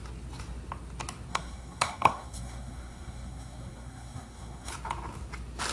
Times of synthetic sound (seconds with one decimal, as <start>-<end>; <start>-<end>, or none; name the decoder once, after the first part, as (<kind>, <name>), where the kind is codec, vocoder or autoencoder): 1.3-4.7 (codec, SNAC)